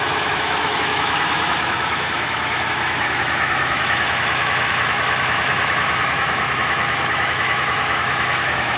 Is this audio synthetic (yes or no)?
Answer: yes